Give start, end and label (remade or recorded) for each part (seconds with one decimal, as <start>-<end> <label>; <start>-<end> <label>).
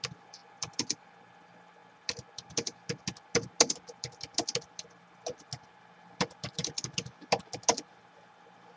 0.0-8.8 recorded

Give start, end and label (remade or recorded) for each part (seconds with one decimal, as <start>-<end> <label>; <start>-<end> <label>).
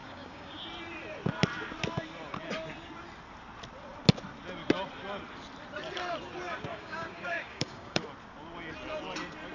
0.0-0.6 remade; 0.6-6.7 recorded; 6.7-8.0 remade; 8.0-9.5 recorded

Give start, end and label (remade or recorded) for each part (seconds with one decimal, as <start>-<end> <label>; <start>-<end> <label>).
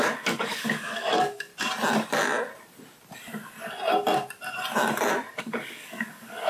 0.0-1.5 remade; 1.5-5.4 recorded; 5.4-6.5 remade